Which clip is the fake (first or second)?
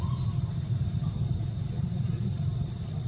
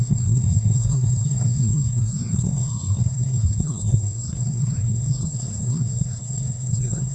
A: second